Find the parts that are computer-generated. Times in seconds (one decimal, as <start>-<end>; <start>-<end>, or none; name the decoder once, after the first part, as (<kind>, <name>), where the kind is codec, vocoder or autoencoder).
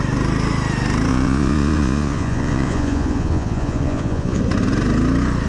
1.1-4.4 (vocoder, Vocos)